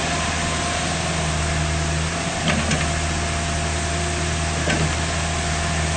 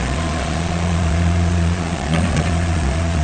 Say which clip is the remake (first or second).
second